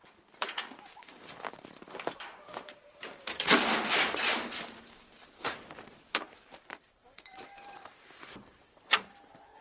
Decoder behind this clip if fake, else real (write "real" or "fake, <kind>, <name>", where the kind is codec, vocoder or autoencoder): fake, vocoder, BigVGAN v2